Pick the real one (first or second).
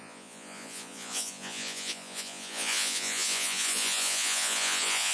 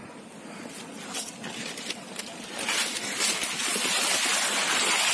second